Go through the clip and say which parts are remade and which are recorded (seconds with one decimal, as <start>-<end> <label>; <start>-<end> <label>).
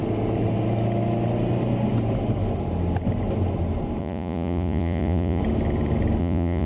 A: 0.0-4.0 recorded; 4.0-5.4 remade; 5.4-6.2 recorded; 6.2-6.7 remade